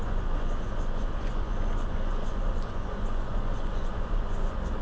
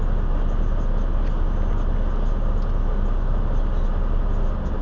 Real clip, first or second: second